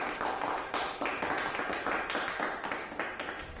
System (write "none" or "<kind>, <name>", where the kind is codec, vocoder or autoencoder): none